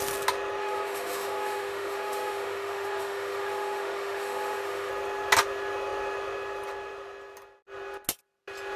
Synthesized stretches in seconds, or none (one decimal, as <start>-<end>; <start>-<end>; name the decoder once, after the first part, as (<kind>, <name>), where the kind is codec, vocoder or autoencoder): 0.6-4.9 (autoencoder, DAC-VAE)